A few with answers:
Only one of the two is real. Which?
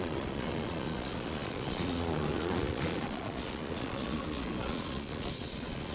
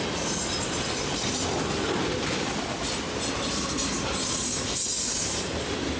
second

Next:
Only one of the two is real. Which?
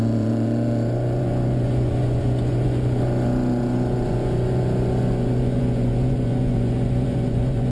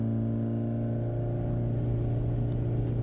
second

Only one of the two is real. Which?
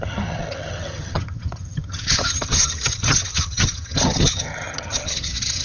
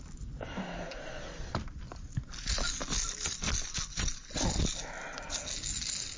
second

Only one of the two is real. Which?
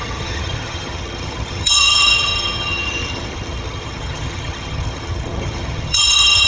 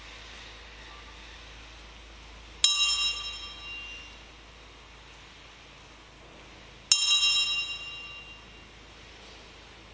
second